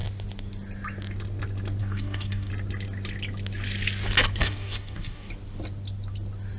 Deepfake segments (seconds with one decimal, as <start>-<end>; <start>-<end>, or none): 1.8-2.5; 4.4-5.3